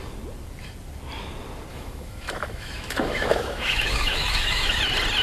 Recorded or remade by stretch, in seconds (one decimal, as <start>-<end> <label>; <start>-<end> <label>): 0.0-1.7 recorded; 1.7-4.8 remade; 4.8-5.2 recorded